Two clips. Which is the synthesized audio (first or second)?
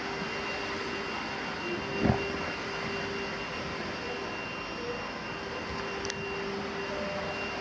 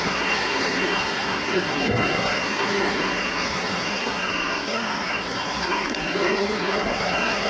second